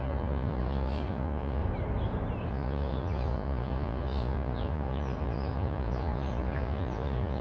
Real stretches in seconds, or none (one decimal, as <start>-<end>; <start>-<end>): 1.6-2.5